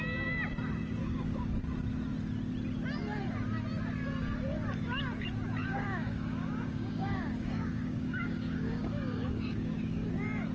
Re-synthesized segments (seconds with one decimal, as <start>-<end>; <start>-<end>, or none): 1.0-1.6; 5.6-10.1